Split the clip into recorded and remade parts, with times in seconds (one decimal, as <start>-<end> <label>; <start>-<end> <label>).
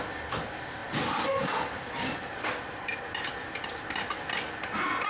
0.0-5.1 recorded